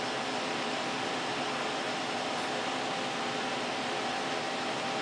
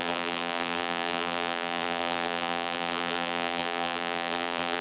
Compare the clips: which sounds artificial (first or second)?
second